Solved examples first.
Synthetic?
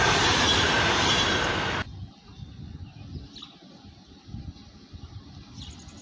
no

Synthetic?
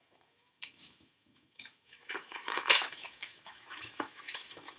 yes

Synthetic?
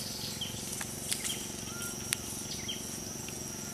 no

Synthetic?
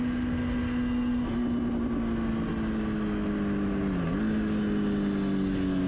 no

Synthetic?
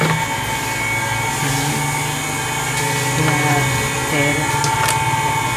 no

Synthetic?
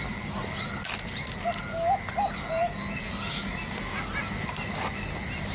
no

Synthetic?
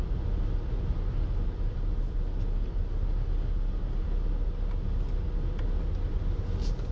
no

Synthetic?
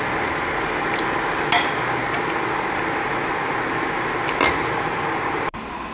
no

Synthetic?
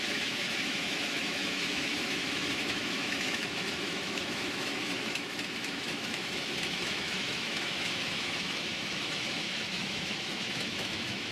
yes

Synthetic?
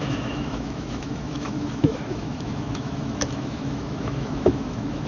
yes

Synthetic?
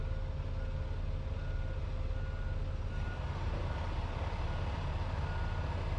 no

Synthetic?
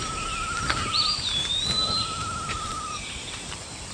no